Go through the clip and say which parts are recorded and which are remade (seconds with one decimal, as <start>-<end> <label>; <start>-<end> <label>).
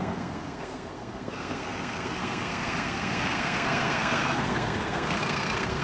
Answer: 0.0-5.8 remade